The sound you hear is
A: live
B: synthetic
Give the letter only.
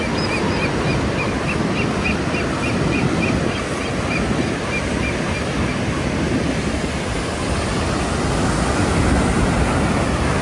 A